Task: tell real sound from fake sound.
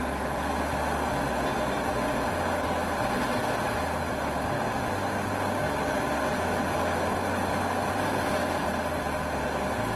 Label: real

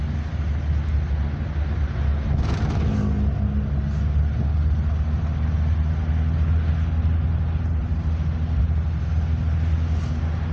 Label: real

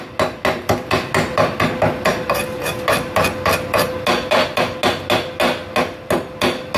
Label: real